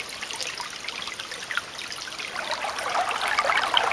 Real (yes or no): yes